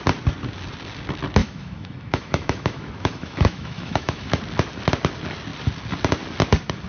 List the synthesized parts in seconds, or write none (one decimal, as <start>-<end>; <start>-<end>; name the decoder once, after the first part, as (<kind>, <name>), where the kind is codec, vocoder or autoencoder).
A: 1.4-4.4 (autoencoder, DAC-VAE)